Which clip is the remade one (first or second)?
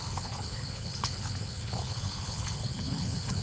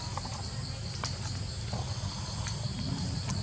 first